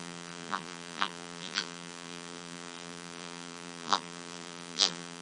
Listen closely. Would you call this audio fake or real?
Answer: fake